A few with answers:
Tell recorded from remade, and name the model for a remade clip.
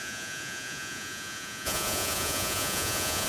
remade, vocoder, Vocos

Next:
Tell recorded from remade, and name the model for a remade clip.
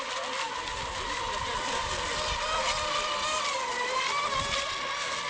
recorded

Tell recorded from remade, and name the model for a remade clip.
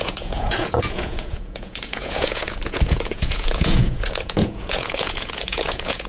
remade, vocoder, Vocos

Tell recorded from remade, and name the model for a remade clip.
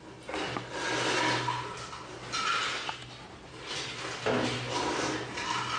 recorded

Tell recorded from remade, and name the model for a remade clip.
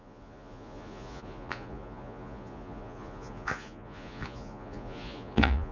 remade, vocoder, Vocos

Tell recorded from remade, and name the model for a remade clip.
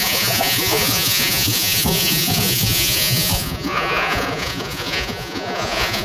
remade, vocoder, Vocos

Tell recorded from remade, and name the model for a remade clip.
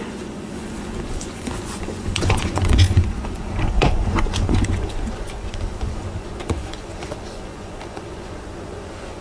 remade, vocoder, Vocos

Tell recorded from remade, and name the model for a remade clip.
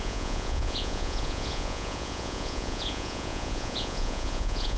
remade, vocoder, Vocos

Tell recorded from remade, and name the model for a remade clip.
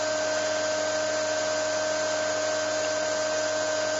recorded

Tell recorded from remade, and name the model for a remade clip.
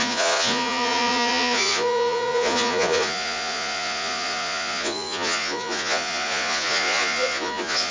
remade, vocoder, Vocos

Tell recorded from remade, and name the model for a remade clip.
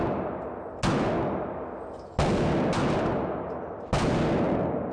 recorded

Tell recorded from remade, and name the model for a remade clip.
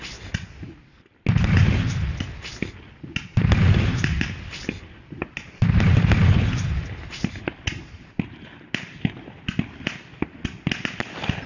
recorded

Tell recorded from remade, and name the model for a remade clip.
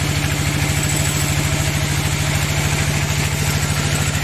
recorded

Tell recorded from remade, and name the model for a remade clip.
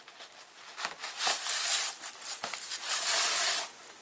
recorded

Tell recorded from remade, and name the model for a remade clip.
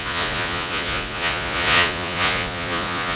remade, vocoder, Vocos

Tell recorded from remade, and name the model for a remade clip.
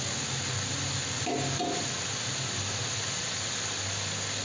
recorded